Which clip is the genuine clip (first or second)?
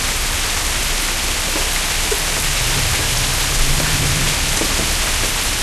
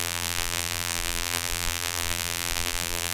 first